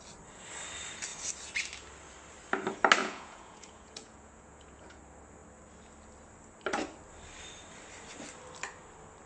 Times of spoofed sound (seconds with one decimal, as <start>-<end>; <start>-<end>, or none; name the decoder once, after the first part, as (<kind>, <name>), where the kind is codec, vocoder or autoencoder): 3.0-5.0 (vocoder, Vocos)